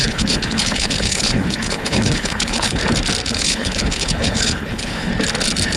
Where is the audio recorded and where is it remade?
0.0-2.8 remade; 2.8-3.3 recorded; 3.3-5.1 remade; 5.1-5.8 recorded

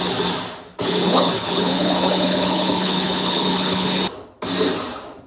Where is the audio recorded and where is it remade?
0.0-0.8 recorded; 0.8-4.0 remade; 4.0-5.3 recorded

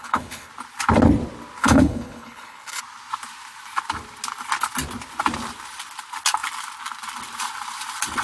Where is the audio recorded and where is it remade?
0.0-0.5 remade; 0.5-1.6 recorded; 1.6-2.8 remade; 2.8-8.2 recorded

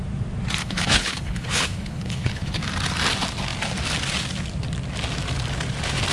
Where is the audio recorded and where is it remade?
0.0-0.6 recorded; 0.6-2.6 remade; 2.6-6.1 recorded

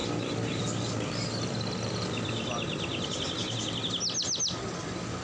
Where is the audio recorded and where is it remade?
0.0-5.2 recorded

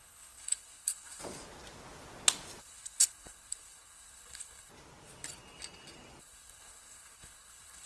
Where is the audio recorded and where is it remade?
0.0-1.2 remade; 1.2-2.6 recorded; 2.6-4.7 remade; 4.7-6.2 recorded; 6.2-7.9 remade